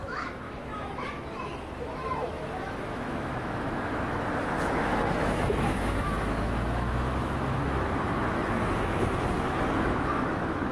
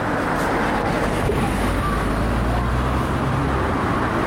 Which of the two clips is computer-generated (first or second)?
first